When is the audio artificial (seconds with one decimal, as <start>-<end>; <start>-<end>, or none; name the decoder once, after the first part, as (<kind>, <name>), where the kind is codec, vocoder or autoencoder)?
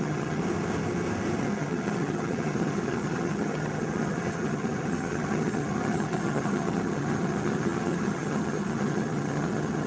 0.0-0.4 (vocoder, HiFi-GAN); 1.4-9.9